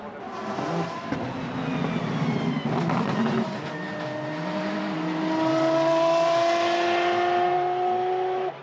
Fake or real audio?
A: real